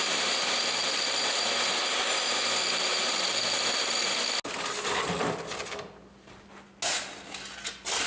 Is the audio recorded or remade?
recorded